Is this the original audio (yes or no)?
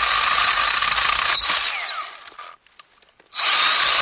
yes